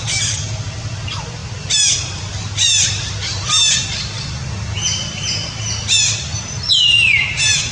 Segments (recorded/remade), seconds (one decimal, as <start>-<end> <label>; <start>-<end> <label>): 0.0-7.7 recorded